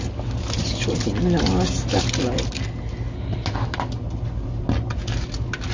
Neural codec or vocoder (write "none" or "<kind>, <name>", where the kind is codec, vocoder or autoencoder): none